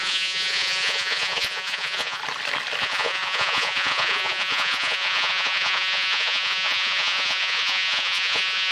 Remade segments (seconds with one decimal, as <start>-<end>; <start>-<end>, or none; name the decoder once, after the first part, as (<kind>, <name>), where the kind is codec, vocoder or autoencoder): 0.0-2.2 (vocoder, Vocos); 2.8-8.7